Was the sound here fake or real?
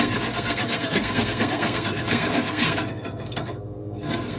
fake